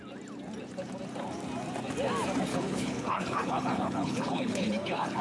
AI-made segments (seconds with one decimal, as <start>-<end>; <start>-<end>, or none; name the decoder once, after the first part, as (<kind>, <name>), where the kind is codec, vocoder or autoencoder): 2.5-5.2 (codec, HILCodec)